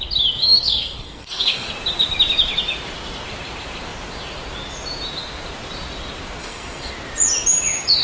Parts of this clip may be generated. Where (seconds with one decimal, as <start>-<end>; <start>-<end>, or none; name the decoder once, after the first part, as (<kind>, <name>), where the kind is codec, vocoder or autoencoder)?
0.4-1.7 (codec, SNAC); 6.4-6.9